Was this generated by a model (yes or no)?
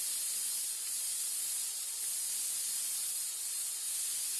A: no